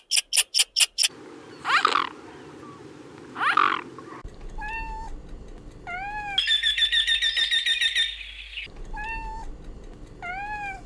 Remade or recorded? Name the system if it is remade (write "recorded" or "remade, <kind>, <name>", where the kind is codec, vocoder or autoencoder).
recorded